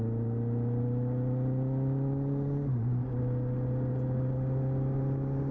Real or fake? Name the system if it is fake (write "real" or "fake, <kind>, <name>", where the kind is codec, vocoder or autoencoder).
real